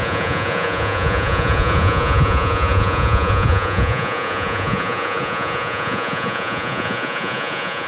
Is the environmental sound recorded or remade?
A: remade